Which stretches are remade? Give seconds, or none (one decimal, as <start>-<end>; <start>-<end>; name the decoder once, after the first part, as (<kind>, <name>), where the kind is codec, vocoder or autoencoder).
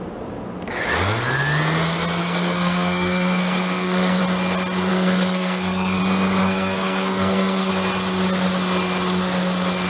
2.2-4.2 (codec, SNAC); 4.9-6.0; 6.4-7.7